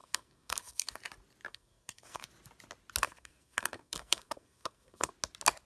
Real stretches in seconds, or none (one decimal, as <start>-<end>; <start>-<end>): 1.0-1.5; 2.3-3.0; 5.1-5.7